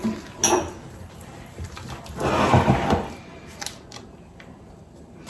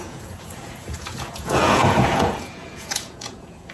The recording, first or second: first